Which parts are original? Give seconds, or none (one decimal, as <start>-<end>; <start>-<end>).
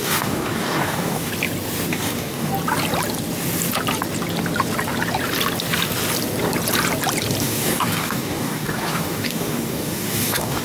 1.3-1.9; 2.5-7.4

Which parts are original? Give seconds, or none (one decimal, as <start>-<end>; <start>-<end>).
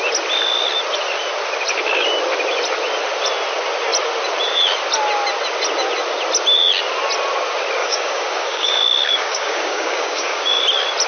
0.0-7.8; 10.6-11.1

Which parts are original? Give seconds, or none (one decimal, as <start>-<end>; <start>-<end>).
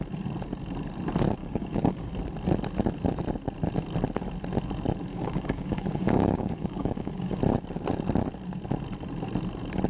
0.0-1.4; 2.1-5.1; 7.4-9.9